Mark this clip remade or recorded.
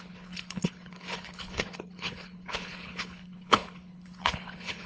remade